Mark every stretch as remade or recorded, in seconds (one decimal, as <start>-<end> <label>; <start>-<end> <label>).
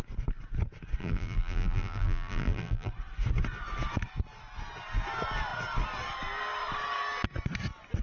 0.0-1.0 recorded; 1.0-2.9 remade; 2.9-8.0 recorded